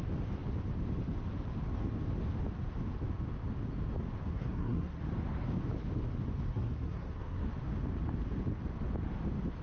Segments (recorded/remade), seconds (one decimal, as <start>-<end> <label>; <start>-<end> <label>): 0.0-4.3 recorded; 4.3-5.0 remade; 5.0-6.5 recorded; 6.5-7.5 remade; 7.5-9.6 recorded